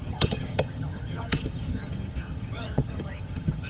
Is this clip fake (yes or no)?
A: yes